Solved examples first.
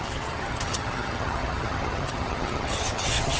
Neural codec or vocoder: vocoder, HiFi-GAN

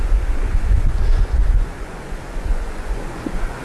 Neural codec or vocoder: vocoder, Vocos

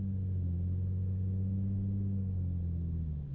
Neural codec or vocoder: none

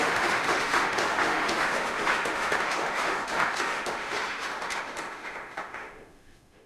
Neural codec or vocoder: autoencoder, DAC-VAE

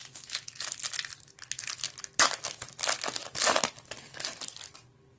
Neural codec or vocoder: none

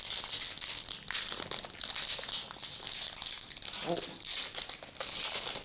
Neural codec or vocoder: none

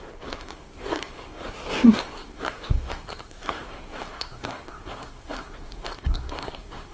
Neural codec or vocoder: codec, SNAC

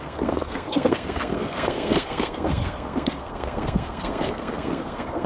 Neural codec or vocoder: codec, SNAC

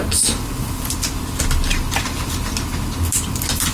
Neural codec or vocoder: none